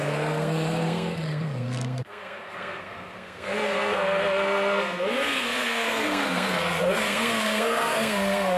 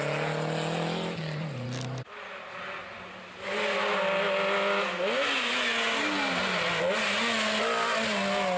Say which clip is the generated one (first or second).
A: first